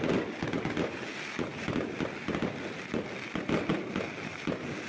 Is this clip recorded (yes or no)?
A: yes